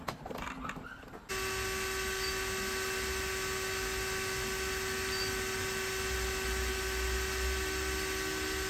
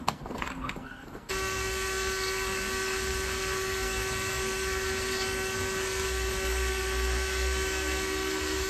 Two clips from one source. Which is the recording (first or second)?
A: first